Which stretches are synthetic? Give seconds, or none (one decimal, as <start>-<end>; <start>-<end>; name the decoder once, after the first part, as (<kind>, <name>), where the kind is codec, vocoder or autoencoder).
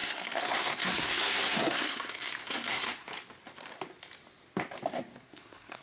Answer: 0.0-3.1 (codec, SNAC); 4.9-5.8